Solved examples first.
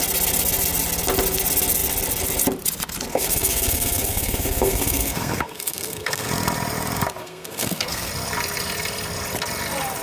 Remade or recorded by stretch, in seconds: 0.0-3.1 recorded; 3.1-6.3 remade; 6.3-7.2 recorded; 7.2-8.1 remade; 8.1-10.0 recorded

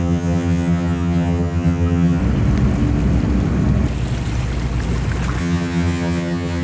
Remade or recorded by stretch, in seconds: 0.0-2.2 remade; 2.2-5.4 recorded; 5.4-6.6 remade

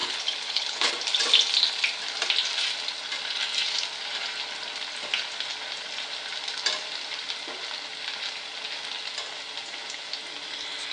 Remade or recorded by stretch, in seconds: 0.0-0.9 remade; 0.9-10.9 recorded

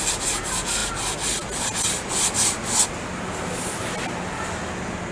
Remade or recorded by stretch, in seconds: 0.0-5.1 recorded

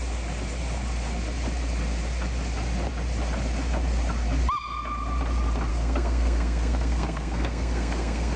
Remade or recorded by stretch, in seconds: 0.0-5.7 recorded; 5.7-8.4 remade

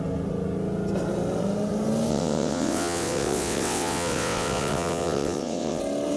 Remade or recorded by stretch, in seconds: 0.0-2.1 recorded; 2.1-5.8 remade; 5.8-6.2 recorded